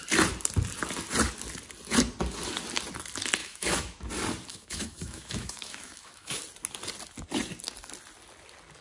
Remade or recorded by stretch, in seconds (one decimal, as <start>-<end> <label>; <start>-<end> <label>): 0.0-3.4 recorded; 3.4-4.1 remade; 4.1-4.5 recorded; 4.5-6.4 remade; 6.4-8.8 recorded